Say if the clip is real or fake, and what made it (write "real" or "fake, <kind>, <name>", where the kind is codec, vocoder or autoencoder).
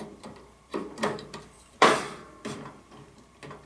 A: fake, vocoder, BigVGAN v2